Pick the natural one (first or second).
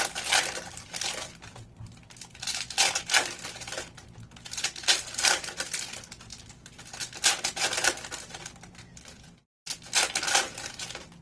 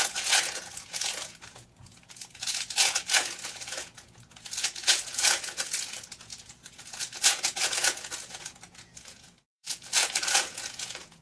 first